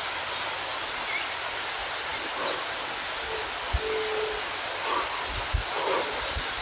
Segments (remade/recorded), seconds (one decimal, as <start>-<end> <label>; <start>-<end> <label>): 0.0-6.6 recorded